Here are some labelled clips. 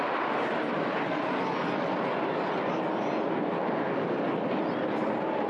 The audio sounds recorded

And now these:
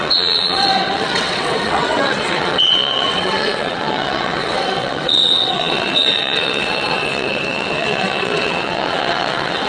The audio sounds remade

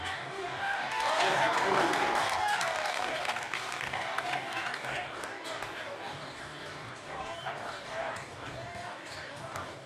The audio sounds remade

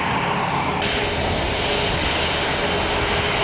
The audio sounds recorded